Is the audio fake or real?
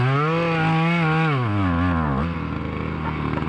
real